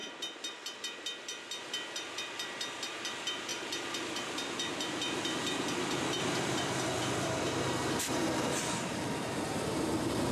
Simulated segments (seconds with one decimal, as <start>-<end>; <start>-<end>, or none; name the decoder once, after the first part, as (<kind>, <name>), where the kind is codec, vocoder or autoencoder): 0.0-10.3 (vocoder, BigVGAN v2)